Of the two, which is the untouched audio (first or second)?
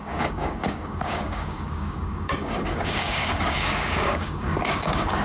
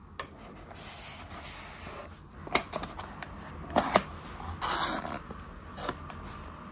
second